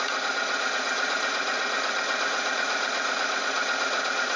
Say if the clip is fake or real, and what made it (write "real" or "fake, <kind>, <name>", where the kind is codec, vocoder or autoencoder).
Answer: fake, vocoder, Vocos